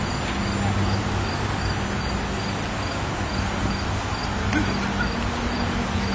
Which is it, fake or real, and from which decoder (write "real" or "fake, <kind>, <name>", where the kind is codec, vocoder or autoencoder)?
real